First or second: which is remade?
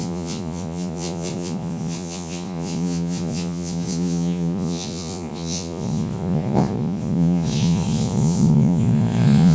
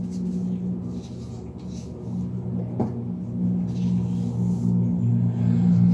first